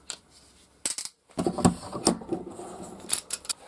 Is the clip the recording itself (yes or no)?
yes